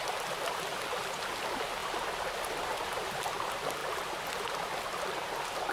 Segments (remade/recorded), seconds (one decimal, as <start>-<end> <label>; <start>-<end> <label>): 0.0-5.7 recorded